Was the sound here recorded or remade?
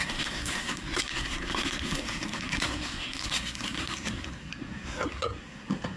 remade